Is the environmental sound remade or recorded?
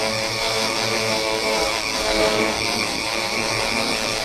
remade